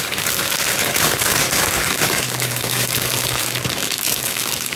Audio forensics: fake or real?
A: fake